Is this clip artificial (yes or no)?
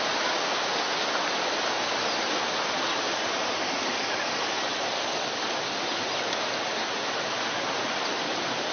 no